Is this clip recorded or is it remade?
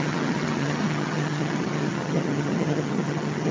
remade